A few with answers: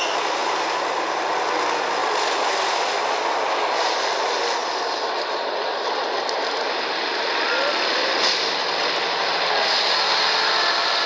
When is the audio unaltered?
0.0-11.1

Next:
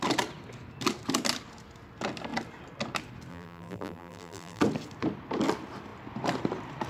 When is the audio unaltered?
0.0-3.3; 4.6-6.9

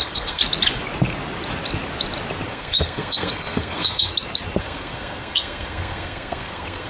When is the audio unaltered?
0.4-2.5; 4.1-4.6

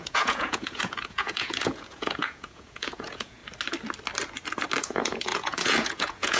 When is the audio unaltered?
3.4-4.8

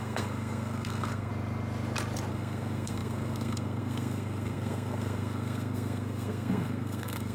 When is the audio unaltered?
1.3-2.3

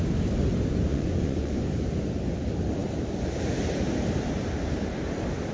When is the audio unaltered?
0.0-0.9; 1.6-5.5